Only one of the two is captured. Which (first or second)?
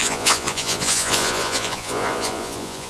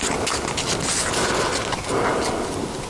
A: second